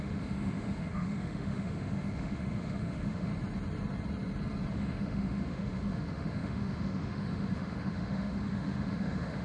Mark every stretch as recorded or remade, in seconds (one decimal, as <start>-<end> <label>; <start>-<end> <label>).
0.0-3.3 remade; 3.3-4.7 recorded; 4.7-9.4 remade